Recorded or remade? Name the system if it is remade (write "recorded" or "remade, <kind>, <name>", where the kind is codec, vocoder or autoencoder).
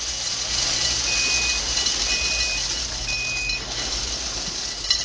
recorded